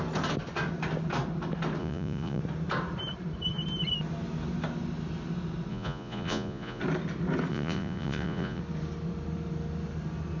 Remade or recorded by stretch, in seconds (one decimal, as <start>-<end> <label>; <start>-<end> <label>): 0.0-1.8 recorded; 1.8-2.4 remade; 2.4-5.7 recorded; 5.7-6.8 remade; 6.8-7.5 recorded; 7.5-8.6 remade; 8.6-10.4 recorded